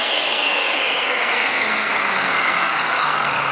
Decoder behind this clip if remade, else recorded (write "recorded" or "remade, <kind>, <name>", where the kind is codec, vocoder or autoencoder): remade, codec, SNAC